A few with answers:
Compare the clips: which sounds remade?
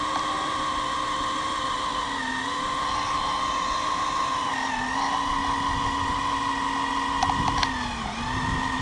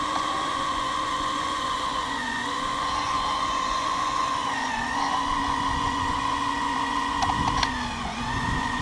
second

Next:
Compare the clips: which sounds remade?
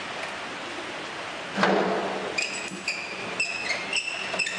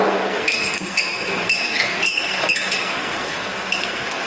second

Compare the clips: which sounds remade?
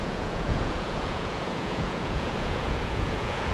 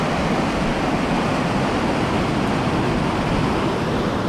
first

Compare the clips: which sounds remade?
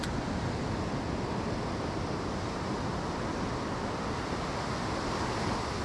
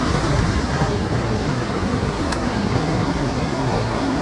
second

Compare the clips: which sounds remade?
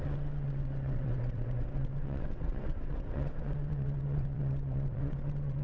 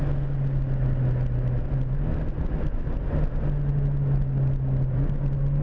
first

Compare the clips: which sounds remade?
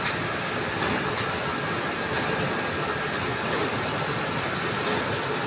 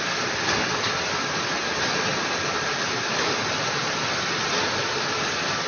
second